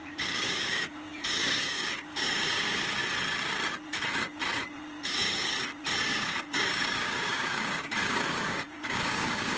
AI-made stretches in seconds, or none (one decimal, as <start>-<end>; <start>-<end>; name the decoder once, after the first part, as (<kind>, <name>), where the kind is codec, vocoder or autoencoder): 0.0-3.0 (codec, DAC); 5.1-5.5; 6.0-9.6